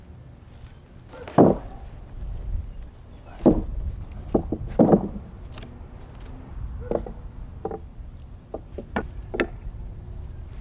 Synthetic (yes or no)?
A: no